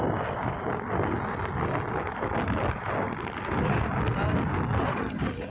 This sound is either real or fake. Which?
real